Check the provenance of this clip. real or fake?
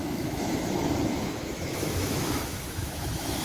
fake